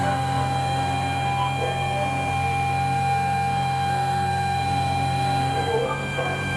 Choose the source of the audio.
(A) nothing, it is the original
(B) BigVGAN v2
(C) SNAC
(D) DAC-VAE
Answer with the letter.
C